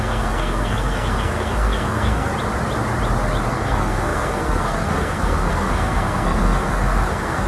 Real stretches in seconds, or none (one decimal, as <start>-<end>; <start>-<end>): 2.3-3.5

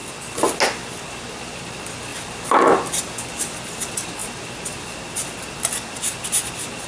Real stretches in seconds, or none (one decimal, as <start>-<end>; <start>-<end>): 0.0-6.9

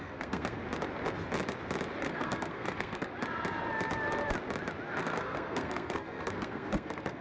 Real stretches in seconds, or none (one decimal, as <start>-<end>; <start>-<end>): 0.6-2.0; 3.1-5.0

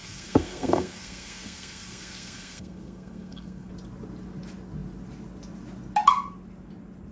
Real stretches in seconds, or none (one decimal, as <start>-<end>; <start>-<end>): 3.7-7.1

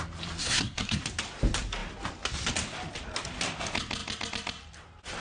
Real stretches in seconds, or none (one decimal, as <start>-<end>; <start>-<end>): 0.0-0.4; 1.0-5.2

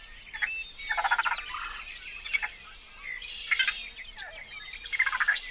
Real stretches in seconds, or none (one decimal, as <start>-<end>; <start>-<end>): 0.0-5.5

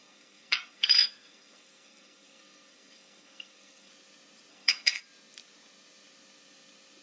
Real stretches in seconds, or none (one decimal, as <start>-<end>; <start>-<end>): 3.9-4.5; 5.0-7.0

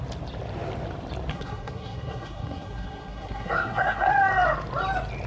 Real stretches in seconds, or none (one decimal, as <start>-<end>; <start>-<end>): 0.0-1.3; 4.1-5.3